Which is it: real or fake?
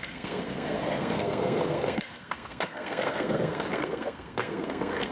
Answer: fake